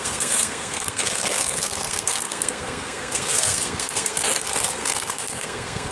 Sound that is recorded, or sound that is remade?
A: remade